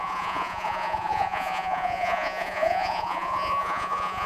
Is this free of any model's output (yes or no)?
no